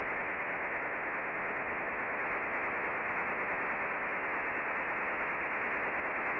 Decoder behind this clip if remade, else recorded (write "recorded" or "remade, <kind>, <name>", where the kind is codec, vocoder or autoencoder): recorded